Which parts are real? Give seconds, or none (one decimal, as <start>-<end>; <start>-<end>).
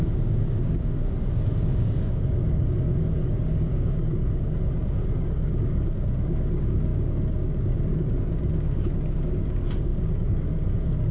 none